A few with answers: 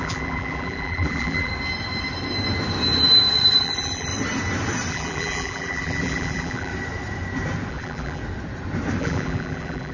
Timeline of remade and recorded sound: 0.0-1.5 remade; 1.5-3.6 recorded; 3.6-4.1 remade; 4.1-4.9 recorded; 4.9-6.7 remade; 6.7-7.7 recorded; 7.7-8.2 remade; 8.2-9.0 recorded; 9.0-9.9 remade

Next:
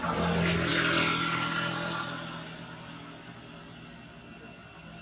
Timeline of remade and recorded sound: 0.0-5.0 recorded

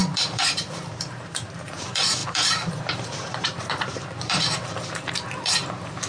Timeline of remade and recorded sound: 0.0-6.1 remade

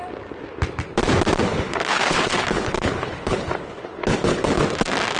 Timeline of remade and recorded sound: 0.0-1.5 recorded; 1.5-4.6 remade; 4.6-5.2 recorded

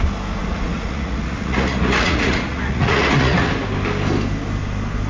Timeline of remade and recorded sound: 0.0-0.4 recorded; 0.4-3.5 remade; 3.5-5.1 recorded

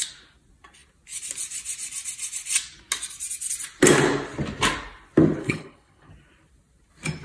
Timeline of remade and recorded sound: 0.0-5.4 recorded; 5.4-6.1 remade; 6.1-7.2 recorded

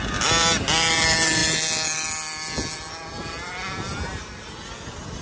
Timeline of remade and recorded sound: 0.0-5.2 recorded